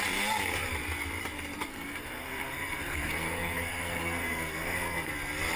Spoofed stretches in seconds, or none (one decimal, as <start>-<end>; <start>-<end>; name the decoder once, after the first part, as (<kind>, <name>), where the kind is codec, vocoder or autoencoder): 1.7-5.1 (codec, SNAC)